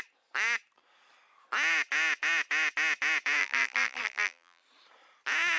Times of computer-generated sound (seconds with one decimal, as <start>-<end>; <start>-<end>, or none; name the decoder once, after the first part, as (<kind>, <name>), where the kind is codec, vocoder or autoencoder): 3.4-4.6 (vocoder, BigVGAN v2)